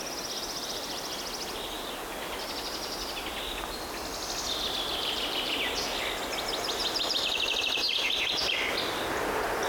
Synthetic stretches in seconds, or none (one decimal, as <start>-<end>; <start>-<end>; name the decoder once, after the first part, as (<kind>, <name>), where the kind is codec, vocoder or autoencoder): 6.8-7.6 (vocoder, BigVGAN v2)